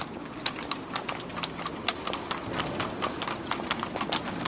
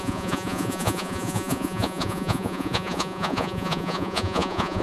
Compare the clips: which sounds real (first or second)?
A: first